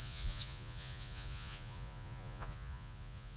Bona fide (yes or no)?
no